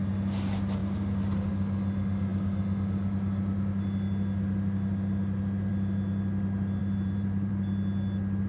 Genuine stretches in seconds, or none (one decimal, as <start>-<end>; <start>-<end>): 0.0-0.8; 1.5-6.8; 7.5-8.5